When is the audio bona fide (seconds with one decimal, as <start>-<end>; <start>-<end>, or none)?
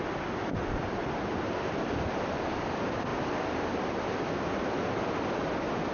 0.0-5.9